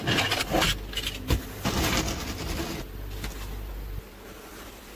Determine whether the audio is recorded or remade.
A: recorded